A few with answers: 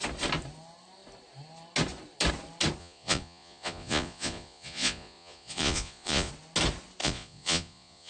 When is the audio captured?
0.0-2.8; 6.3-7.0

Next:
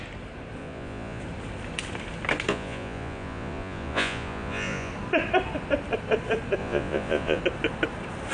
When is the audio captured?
0.0-0.6; 1.2-2.5; 4.9-6.6; 7.4-8.3

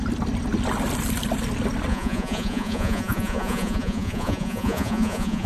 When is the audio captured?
0.0-1.9

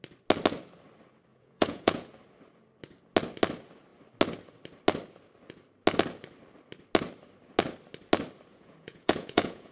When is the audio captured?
0.0-1.3; 2.1-8.5

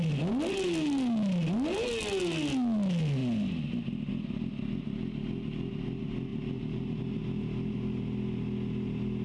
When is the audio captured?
0.0-9.2

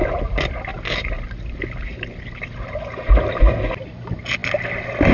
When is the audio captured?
0.0-5.1